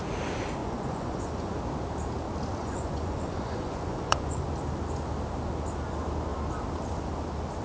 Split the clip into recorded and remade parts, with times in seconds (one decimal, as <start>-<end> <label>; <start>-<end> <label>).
0.0-0.6 recorded; 0.6-1.6 remade; 1.6-2.6 recorded; 2.6-4.5 remade; 4.5-7.6 recorded